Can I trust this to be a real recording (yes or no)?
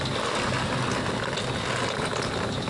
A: yes